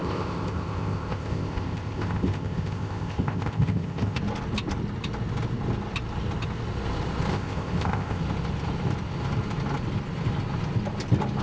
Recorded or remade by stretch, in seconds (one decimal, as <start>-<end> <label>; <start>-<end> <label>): 0.0-4.2 remade; 4.2-7.3 recorded; 7.3-8.2 remade; 8.2-11.4 recorded